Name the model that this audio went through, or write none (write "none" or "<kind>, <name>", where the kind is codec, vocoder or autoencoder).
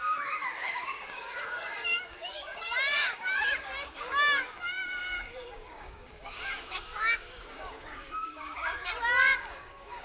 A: codec, DAC